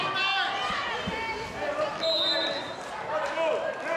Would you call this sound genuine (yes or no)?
yes